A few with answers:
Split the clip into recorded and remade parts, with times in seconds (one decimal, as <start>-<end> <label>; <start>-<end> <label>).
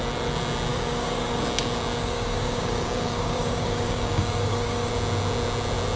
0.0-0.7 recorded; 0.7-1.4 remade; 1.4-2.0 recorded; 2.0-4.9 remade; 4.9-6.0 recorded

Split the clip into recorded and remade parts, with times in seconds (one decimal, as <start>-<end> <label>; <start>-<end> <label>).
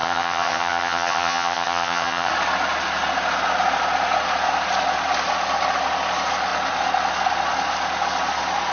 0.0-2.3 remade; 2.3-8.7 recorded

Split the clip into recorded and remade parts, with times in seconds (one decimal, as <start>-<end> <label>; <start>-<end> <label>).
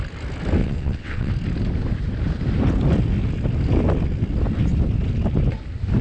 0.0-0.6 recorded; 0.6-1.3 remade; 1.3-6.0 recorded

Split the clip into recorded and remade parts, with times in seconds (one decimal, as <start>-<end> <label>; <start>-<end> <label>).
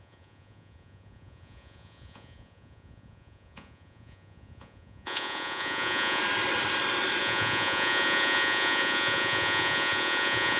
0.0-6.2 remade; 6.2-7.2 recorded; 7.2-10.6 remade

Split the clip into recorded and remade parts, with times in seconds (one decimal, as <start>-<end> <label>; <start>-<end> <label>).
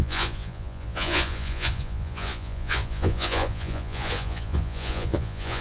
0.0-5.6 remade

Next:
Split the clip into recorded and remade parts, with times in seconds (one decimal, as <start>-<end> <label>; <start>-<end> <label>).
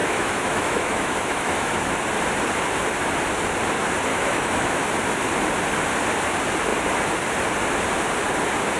0.0-2.0 remade; 2.0-4.1 recorded; 4.1-4.8 remade; 4.8-8.8 recorded